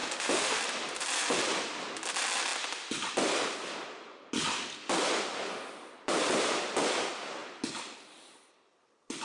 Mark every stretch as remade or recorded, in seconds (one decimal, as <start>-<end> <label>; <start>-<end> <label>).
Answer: 0.0-0.6 remade; 0.6-9.2 recorded